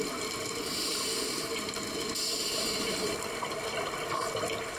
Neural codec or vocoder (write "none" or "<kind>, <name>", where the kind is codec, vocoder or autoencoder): none